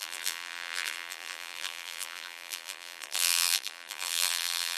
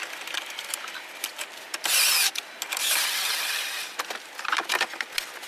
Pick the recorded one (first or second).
second